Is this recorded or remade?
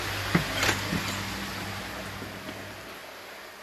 recorded